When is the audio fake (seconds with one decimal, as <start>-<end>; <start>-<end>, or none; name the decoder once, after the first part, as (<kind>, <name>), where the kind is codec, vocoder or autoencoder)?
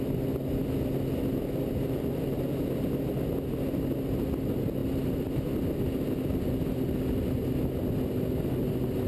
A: 4.8-5.3 (vocoder, BigVGAN v2)